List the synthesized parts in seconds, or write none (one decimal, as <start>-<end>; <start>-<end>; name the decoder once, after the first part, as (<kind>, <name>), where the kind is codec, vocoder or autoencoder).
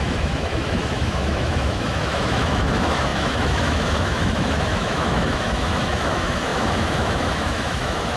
0.0-8.2 (autoencoder, DAC-VAE)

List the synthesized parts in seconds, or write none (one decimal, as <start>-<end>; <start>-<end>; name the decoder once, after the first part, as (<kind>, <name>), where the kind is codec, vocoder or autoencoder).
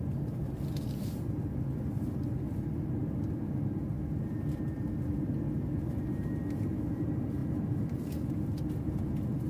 none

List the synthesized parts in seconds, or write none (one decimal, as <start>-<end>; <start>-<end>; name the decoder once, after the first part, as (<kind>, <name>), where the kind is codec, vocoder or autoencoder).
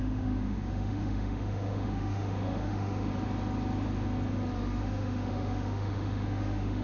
0.0-3.1 (autoencoder, DAC-VAE); 4.8-6.8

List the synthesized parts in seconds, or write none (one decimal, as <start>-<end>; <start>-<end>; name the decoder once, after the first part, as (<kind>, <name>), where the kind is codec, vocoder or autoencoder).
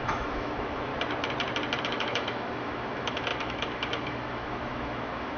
0.0-0.9 (autoencoder, DAC-VAE); 1.8-5.4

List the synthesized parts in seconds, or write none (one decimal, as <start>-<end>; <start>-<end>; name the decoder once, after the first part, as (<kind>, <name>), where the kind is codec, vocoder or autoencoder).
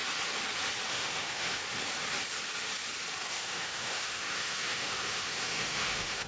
0.9-1.6 (autoencoder, DAC-VAE); 3.3-6.3